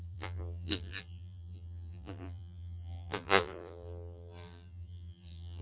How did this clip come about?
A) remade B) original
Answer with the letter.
A